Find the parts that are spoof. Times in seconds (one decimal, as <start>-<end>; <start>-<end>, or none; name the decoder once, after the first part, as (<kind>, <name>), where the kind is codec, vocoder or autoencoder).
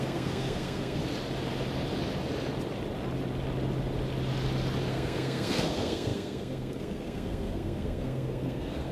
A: 0.0-1.0 (codec, SNAC); 4.9-8.9